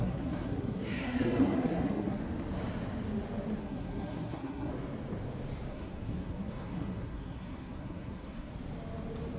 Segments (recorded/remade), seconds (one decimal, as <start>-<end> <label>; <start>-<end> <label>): 0.0-2.2 remade; 2.2-3.6 recorded; 3.6-4.7 remade; 4.7-5.7 recorded; 5.7-8.5 remade; 8.5-9.4 recorded